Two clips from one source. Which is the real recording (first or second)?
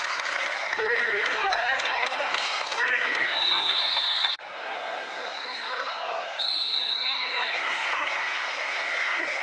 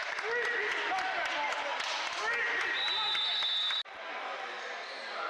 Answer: second